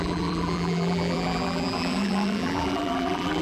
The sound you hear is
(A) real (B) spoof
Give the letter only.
B